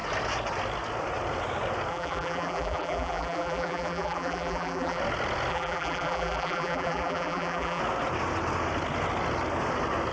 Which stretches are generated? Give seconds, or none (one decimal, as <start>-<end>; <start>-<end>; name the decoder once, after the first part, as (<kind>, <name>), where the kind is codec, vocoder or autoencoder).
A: 1.9-5.0 (vocoder, BigVGAN v2); 5.5-7.8